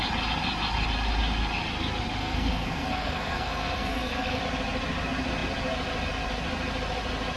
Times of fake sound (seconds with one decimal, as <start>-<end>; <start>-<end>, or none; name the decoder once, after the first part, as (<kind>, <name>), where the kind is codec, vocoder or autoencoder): 2.2-4.4 (codec, SNAC)